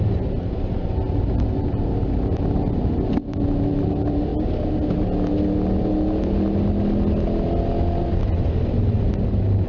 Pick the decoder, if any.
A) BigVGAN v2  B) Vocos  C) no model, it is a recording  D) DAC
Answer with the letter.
C